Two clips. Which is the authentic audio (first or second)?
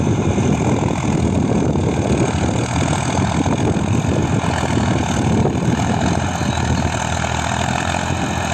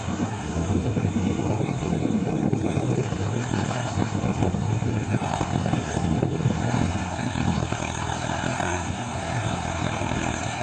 first